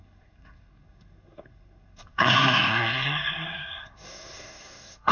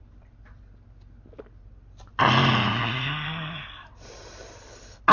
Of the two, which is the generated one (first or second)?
first